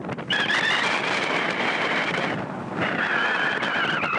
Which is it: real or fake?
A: real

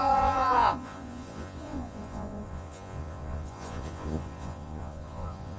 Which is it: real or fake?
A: fake